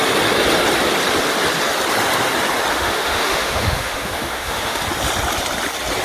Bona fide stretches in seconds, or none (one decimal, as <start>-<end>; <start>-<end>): 0.0-2.7; 4.8-6.0

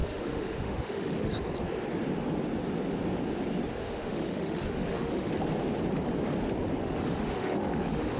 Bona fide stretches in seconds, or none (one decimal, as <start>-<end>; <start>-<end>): 1.3-3.7; 5.3-6.8

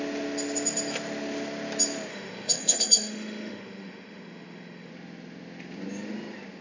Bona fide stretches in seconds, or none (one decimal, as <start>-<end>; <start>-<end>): 0.0-2.1; 4.9-6.6

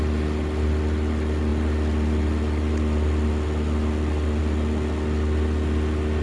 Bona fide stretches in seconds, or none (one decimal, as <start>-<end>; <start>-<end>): 0.0-6.2

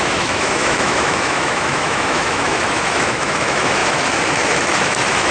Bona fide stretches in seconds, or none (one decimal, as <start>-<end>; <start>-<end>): none